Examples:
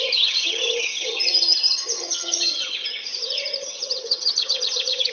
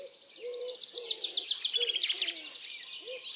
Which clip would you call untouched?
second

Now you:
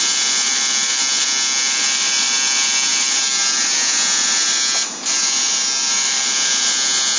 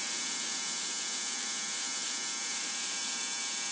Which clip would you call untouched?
first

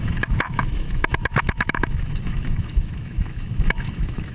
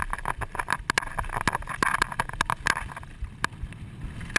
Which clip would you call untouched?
second